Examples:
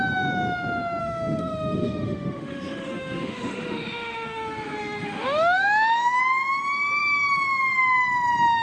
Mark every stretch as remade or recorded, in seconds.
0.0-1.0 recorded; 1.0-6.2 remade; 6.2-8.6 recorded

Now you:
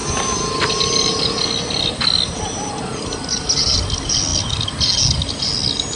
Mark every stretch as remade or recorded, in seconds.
0.0-6.0 recorded

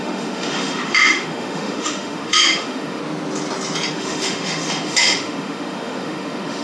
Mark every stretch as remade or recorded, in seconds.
0.0-3.0 remade; 3.0-3.9 recorded; 3.9-6.6 remade

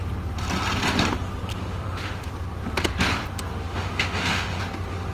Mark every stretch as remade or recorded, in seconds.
0.0-1.5 recorded; 1.5-2.3 remade; 2.3-3.7 recorded; 3.7-4.6 remade; 4.6-5.1 recorded

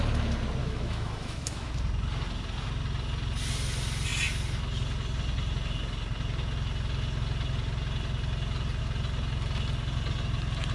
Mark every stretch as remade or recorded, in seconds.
0.0-0.6 recorded; 0.6-1.7 remade; 1.7-10.7 recorded